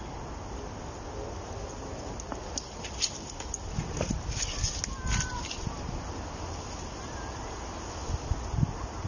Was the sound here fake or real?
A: real